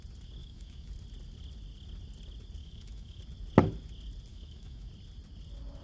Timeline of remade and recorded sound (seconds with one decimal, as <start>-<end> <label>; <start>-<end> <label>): 0.0-0.4 recorded; 0.4-0.9 remade; 0.9-2.6 recorded; 2.6-3.2 remade; 3.2-4.3 recorded; 4.3-4.9 remade; 4.9-5.8 recorded